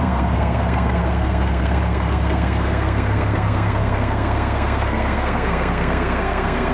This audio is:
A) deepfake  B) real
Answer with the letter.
A